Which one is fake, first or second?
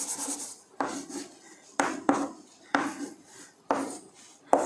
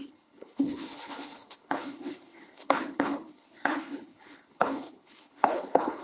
second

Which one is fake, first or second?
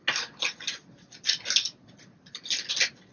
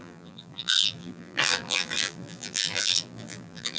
second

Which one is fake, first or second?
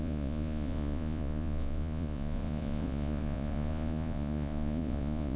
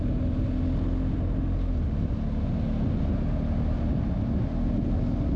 first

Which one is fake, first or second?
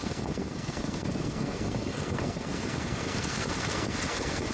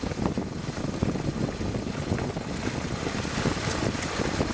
first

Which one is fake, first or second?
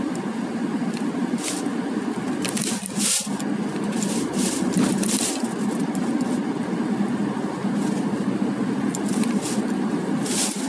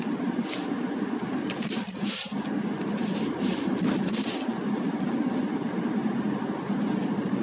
second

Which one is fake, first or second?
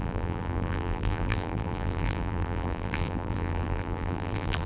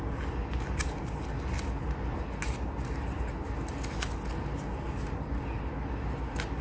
first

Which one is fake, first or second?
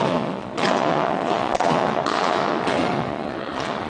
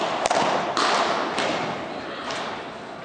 first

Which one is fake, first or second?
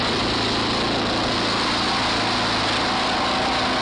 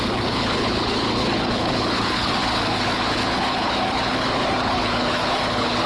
second